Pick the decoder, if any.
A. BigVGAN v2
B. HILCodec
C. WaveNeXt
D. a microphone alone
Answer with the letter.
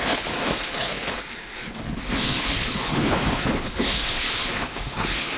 B